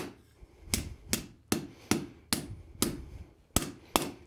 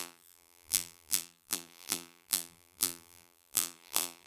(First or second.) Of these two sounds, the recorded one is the first